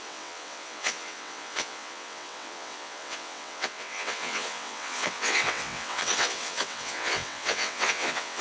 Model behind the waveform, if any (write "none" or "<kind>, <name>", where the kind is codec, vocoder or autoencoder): vocoder, WaveNeXt